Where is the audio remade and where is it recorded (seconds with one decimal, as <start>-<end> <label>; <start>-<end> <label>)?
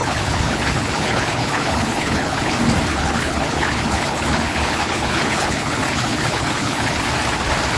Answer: 0.0-2.5 remade; 2.5-2.9 recorded; 2.9-7.0 remade; 7.0-7.8 recorded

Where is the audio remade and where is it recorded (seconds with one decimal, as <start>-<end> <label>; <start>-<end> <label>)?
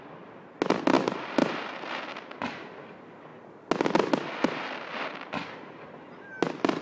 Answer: 0.0-6.8 recorded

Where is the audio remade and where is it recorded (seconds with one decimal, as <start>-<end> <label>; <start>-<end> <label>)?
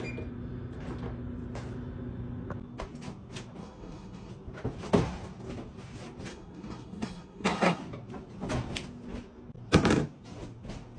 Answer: 0.0-3.6 recorded; 3.6-4.3 remade; 4.3-6.3 recorded; 6.3-7.8 remade; 7.8-11.0 recorded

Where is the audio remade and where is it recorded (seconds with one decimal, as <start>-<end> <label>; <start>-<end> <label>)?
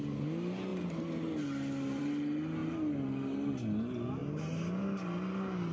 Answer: 0.0-5.7 recorded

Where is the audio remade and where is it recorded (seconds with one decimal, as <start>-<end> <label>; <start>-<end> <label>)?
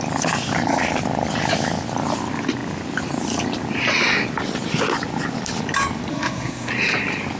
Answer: 0.0-6.1 recorded; 6.1-6.7 remade; 6.7-7.4 recorded